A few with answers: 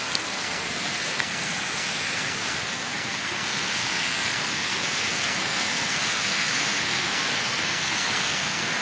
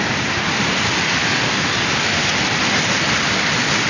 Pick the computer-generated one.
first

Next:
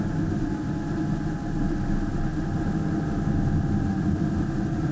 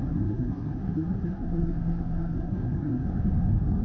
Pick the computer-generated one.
second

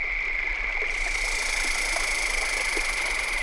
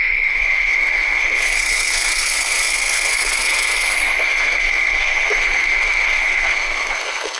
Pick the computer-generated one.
second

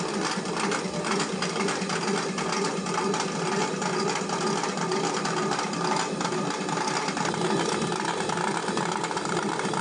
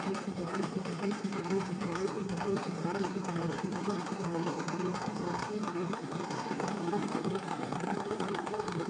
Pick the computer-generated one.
second